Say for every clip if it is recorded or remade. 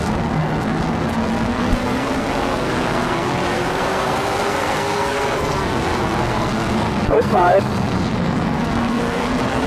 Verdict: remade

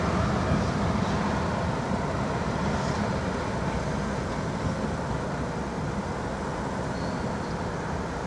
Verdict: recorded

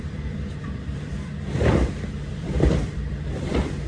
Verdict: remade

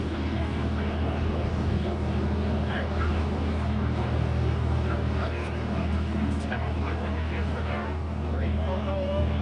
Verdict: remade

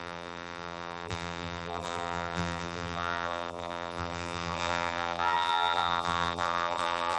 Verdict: remade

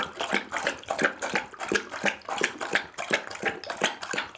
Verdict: recorded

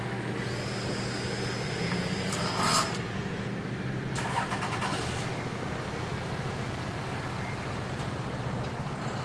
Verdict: recorded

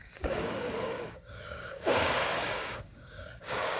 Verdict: remade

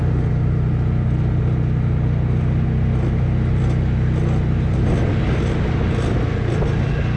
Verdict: recorded